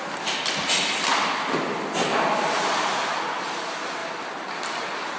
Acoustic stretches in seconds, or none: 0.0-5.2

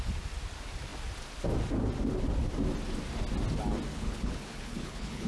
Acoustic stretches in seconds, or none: 0.0-3.9